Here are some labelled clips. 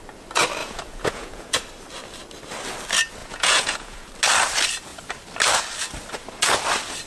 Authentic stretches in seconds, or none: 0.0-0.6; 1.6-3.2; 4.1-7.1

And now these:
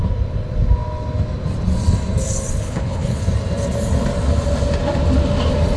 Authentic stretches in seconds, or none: 0.0-2.6; 3.2-5.8

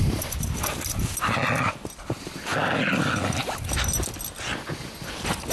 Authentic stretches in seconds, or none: 2.5-5.0

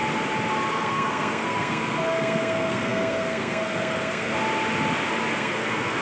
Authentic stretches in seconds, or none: 0.0-0.7; 4.3-5.3

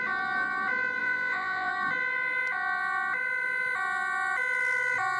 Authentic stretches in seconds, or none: 0.0-1.0; 1.7-5.2

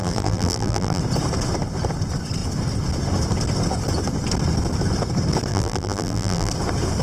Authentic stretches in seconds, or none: 1.0-5.5; 6.5-7.0

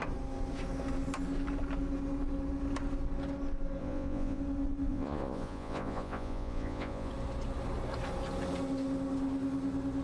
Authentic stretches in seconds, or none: 0.0-3.8; 4.4-4.9; 7.1-10.0